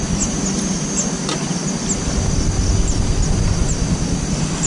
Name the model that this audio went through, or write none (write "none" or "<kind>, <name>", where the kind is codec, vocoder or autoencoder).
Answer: none